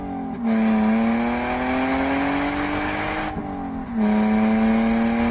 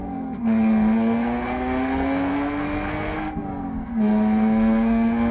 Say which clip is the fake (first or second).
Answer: second